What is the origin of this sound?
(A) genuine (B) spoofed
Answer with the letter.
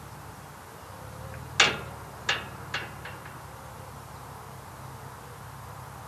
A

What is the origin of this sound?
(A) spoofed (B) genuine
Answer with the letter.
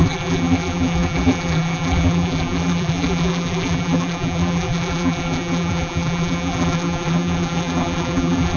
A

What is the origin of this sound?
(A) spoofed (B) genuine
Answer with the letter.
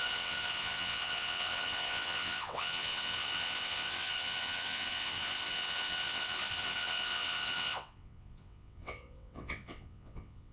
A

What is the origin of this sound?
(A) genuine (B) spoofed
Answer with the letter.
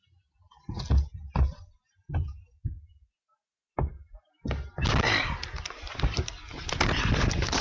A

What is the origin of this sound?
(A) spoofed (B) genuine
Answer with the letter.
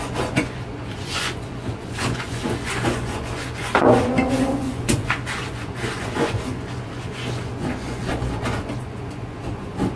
A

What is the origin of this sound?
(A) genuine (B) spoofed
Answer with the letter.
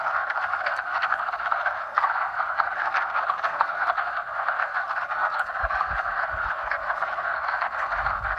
B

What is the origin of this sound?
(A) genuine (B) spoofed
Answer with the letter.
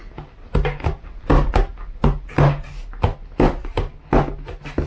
A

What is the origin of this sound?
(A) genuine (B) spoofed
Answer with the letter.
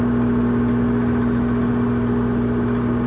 A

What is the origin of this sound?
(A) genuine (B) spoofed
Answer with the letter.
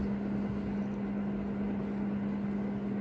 A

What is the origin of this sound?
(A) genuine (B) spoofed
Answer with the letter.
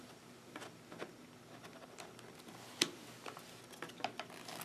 A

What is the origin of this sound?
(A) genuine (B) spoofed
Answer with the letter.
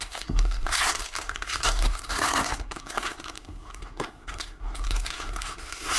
B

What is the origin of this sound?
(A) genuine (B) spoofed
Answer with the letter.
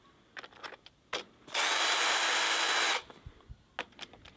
A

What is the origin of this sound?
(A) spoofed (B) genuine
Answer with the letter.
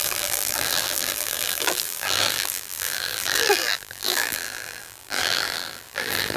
A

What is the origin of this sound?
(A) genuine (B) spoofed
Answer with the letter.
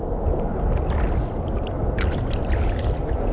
A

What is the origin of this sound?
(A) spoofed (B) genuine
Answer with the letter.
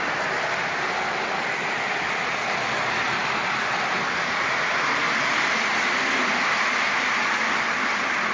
B